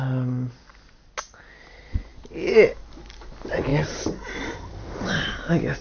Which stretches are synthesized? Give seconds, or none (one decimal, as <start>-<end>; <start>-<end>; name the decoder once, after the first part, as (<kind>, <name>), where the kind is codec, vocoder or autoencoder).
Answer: 3.7-5.8 (vocoder, BigVGAN v2)